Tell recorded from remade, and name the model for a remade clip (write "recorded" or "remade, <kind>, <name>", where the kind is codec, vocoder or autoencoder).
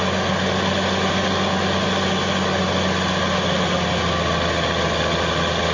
recorded